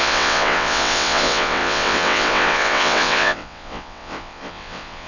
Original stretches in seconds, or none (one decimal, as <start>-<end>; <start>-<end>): none